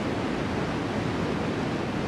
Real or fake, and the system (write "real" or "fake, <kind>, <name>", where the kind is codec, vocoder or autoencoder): real